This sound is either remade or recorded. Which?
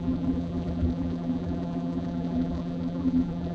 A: remade